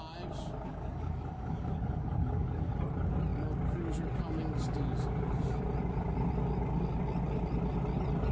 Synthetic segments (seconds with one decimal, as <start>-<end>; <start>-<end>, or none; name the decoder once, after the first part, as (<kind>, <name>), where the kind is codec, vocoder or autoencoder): 0.7-2.7 (codec, DAC)